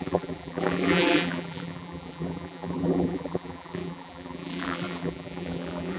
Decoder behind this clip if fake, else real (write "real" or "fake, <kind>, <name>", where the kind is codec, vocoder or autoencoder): fake, vocoder, BigVGAN v2